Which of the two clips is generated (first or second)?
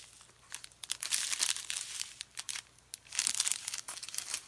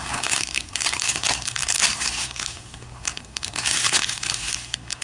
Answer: second